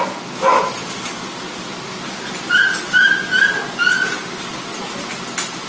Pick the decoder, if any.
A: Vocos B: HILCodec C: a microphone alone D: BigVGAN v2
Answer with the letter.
C